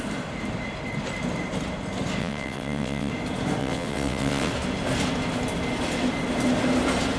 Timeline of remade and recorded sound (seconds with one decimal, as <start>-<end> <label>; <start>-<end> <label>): 0.0-2.2 recorded; 2.2-3.1 remade; 3.1-3.6 recorded; 3.6-4.5 remade; 4.5-7.2 recorded